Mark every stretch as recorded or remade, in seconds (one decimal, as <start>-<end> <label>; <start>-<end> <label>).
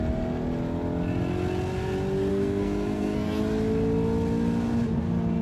0.0-2.3 recorded; 2.3-3.4 remade; 3.4-5.4 recorded